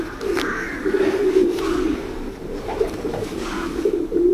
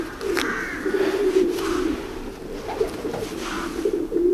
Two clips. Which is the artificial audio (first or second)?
first